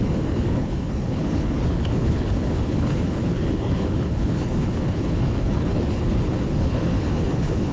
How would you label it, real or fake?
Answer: fake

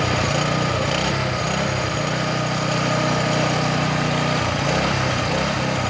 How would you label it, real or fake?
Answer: real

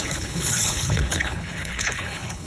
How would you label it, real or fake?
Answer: fake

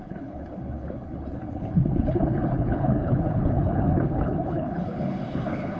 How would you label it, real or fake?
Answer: fake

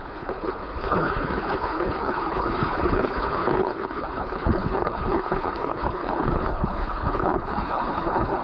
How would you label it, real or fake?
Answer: fake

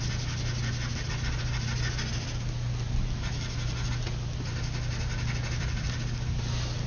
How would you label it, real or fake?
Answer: real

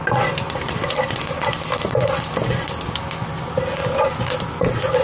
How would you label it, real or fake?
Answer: real